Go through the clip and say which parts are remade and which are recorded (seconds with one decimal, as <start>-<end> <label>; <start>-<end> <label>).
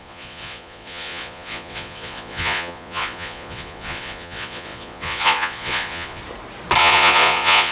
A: 0.0-6.2 remade; 6.2-6.8 recorded; 6.8-7.7 remade